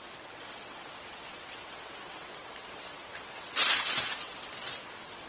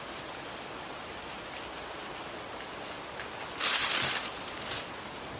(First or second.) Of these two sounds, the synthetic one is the first